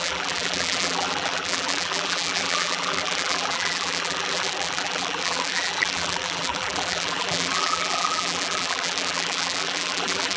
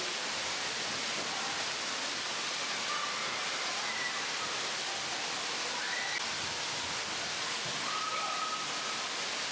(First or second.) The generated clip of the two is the first